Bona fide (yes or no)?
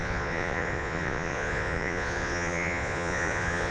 no